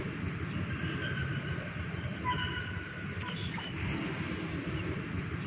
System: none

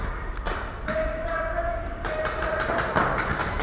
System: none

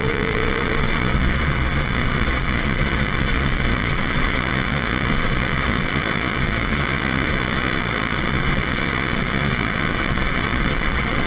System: vocoder, Vocos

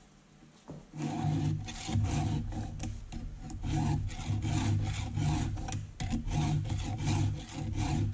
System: none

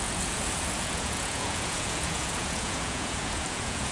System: vocoder, Vocos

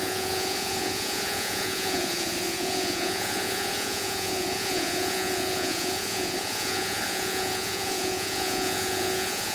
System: vocoder, Vocos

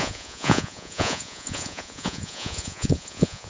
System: vocoder, Vocos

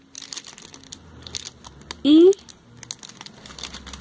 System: none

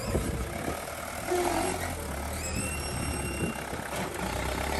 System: none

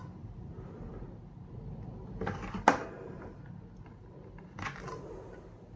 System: none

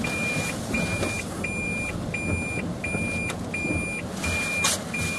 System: none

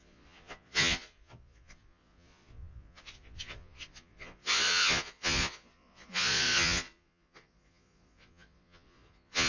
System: vocoder, Vocos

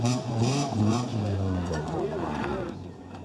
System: vocoder, Vocos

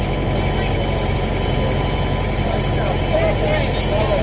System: none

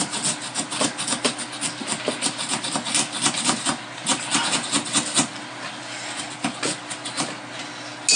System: none